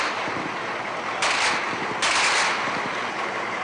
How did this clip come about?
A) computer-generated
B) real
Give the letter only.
B